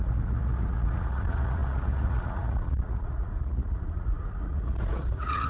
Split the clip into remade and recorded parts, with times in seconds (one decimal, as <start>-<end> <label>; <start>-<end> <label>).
0.0-5.5 remade